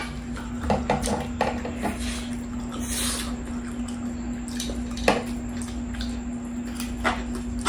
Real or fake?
real